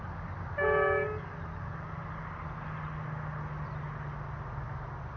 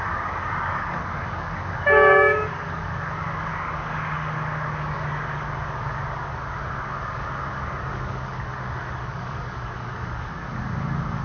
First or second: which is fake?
second